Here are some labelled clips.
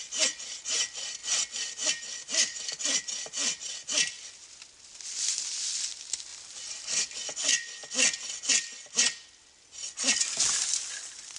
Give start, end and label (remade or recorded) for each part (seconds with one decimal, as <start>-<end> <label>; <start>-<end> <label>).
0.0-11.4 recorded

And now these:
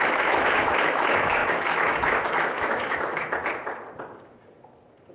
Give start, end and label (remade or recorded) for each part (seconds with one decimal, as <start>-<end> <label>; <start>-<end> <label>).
0.0-3.4 remade; 3.4-5.1 recorded

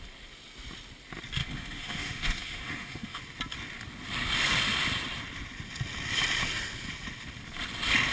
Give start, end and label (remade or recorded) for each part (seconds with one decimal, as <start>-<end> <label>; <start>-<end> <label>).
0.0-1.4 recorded; 1.4-3.2 remade; 3.2-8.1 recorded

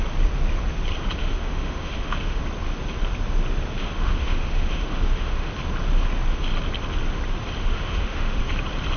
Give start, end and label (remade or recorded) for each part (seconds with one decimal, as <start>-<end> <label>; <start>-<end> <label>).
0.0-1.2 recorded; 1.2-2.4 remade; 2.4-3.8 recorded; 3.8-5.5 remade; 5.5-7.6 recorded; 7.6-8.4 remade; 8.4-9.0 recorded

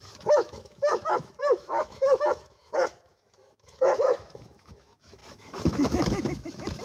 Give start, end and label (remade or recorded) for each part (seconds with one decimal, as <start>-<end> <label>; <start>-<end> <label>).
0.0-6.8 remade

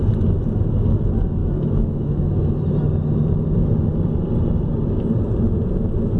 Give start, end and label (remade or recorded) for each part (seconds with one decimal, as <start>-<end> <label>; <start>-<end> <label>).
0.0-1.4 recorded; 1.4-2.5 remade; 2.5-6.2 recorded